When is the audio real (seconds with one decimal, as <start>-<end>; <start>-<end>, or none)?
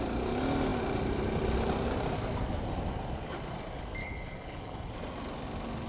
0.0-4.0; 4.9-5.9